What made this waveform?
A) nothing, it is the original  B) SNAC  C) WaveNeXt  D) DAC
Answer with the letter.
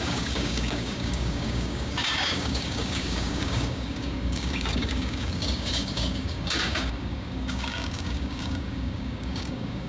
D